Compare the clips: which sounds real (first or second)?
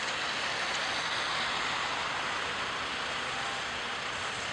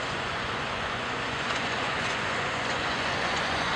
first